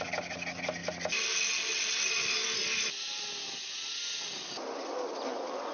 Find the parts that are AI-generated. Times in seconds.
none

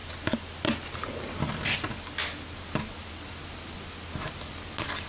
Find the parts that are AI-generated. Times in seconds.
none

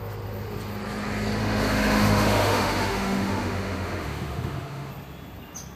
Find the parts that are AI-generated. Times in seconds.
1.4-4.9 (autoencoder, DAC-VAE)

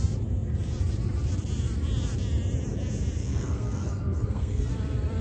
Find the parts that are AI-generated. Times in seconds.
3.2-4.7 (codec, SNAC)

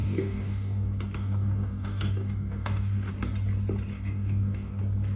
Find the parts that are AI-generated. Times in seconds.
0.0-3.1 (codec, DAC); 3.9-4.8

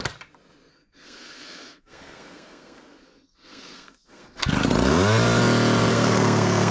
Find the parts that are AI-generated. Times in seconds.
0.7-4.5 (codec, SNAC); 5.9-6.7

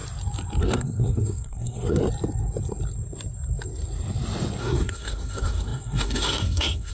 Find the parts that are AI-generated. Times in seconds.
0.6-2.0 (codec, SNAC); 4.6-6.9

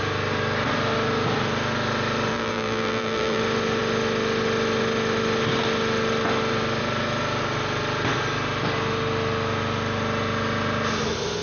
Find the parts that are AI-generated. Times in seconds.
2.3-3.4 (vocoder, BigVGAN v2)